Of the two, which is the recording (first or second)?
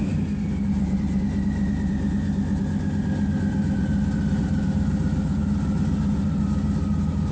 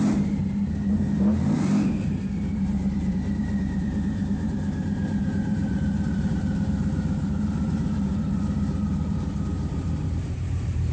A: first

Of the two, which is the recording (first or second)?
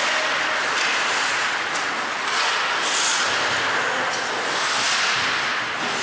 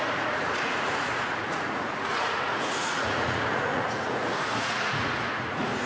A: first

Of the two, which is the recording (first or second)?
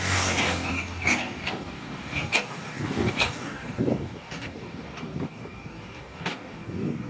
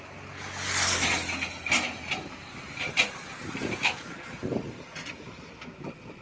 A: second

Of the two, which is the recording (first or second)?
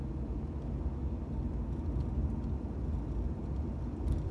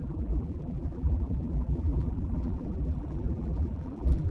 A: first